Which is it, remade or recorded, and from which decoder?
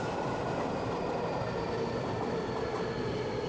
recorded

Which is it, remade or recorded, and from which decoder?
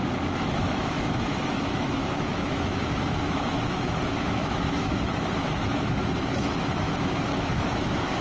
remade, autoencoder, DAC-VAE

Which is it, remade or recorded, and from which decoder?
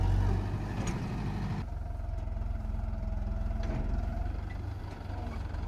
recorded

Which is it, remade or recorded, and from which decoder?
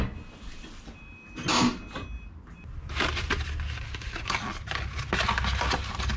recorded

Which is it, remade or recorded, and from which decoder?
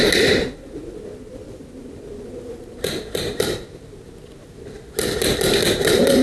recorded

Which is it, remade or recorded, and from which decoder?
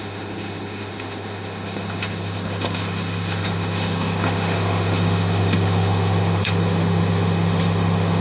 remade, autoencoder, DAC-VAE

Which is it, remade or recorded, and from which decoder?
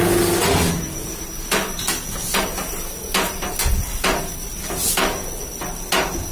recorded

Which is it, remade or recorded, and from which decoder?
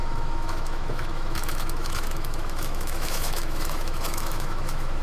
remade, autoencoder, DAC-VAE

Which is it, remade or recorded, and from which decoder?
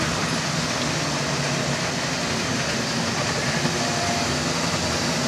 recorded